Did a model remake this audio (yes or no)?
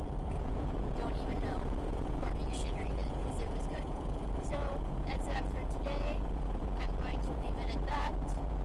yes